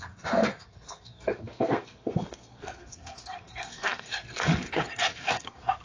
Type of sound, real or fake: fake